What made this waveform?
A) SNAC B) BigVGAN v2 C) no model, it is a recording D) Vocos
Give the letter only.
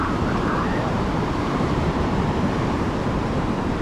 B